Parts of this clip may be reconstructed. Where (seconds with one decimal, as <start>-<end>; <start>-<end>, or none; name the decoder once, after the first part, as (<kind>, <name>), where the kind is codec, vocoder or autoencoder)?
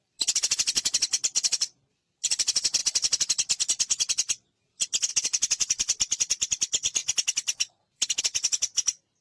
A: 0.0-9.2 (vocoder, BigVGAN v2)